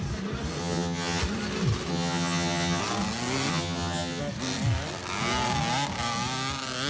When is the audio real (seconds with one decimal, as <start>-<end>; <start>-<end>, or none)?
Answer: 0.0-0.6; 1.2-1.9; 2.8-3.5; 4.2-6.9